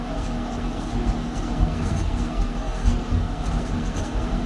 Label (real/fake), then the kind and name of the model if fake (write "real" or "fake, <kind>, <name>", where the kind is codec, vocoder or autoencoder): fake, codec, SNAC